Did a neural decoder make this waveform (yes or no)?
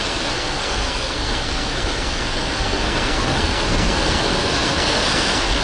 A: yes